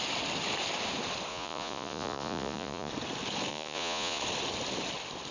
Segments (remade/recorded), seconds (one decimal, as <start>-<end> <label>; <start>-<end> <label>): 0.0-1.3 recorded; 1.3-2.9 remade; 2.9-3.5 recorded; 3.5-4.2 remade; 4.2-5.3 recorded